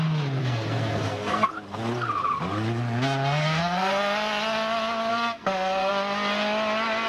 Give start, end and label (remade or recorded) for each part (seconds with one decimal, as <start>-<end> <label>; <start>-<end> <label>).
0.0-0.4 recorded; 0.4-1.5 remade; 1.5-3.4 recorded; 3.4-3.9 remade; 3.9-5.1 recorded; 5.1-5.9 remade; 5.9-7.1 recorded